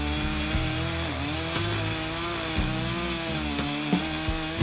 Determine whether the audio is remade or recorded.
recorded